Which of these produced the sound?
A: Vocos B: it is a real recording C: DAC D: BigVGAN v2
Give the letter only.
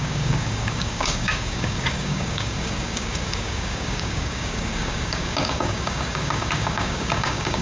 C